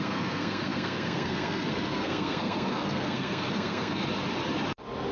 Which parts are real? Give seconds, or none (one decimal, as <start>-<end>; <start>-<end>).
4.0-5.1